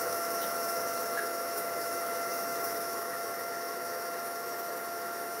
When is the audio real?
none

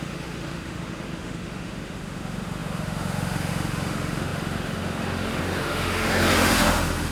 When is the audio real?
none

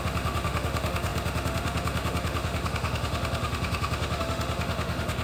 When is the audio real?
none

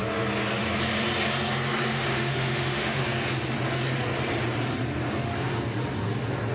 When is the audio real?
0.0-2.1; 3.0-6.5

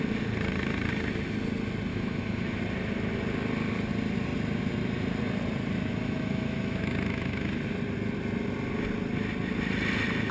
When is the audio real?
0.0-1.9; 2.6-5.9; 7.6-10.3

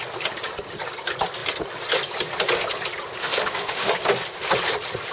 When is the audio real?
0.0-3.2; 3.9-5.1

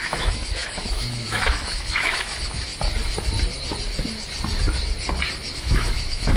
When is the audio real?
2.7-5.5